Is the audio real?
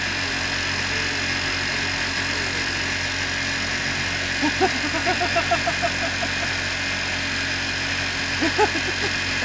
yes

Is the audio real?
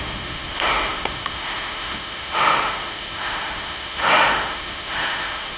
no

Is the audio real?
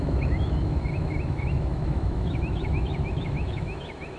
no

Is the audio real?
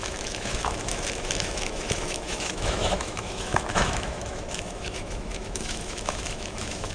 no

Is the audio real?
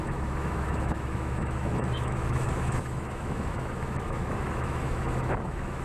no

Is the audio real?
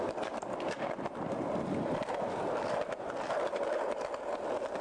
yes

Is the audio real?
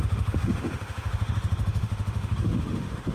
no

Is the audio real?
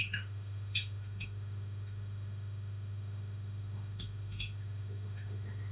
no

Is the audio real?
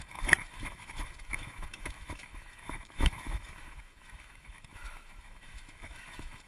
no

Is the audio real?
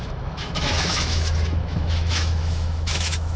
no